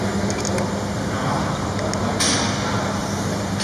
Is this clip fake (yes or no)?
no